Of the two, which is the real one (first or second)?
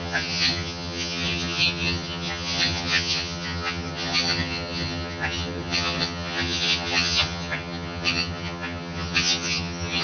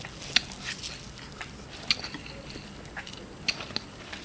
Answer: second